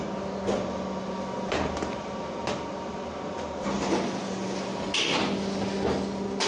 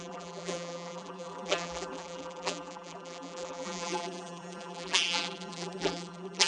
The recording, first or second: first